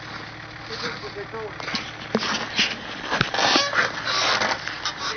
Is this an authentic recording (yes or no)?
yes